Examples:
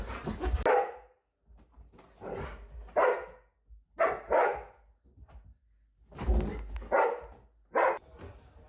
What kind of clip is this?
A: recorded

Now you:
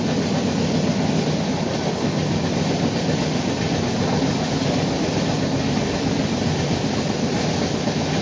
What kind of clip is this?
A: recorded